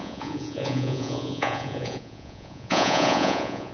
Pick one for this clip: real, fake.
fake